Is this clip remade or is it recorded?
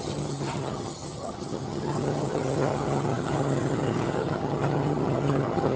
remade